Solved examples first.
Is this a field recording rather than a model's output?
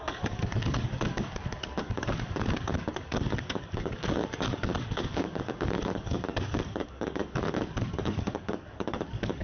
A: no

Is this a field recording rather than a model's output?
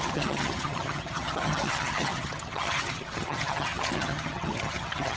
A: no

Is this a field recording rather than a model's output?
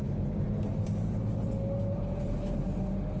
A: yes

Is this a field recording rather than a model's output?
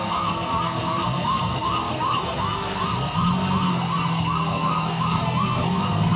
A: no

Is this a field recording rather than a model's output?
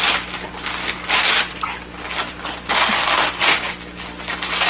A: yes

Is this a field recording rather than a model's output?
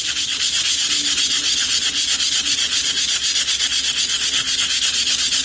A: yes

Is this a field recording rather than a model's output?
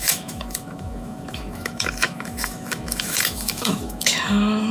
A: no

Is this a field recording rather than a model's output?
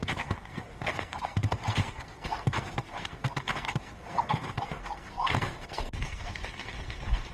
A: no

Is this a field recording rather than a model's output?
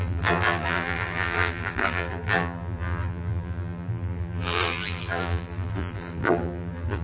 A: no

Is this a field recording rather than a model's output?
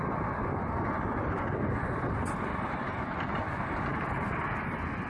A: yes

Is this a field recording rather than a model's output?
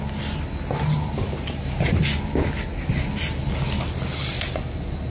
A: yes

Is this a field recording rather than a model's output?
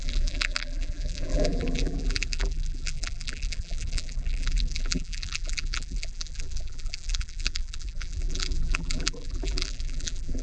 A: no